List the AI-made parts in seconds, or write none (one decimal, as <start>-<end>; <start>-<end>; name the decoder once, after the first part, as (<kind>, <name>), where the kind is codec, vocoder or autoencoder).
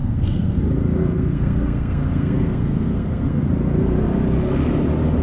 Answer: 0.0-0.6 (codec, SNAC); 1.0-3.4